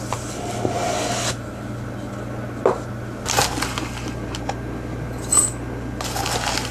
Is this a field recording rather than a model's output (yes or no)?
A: yes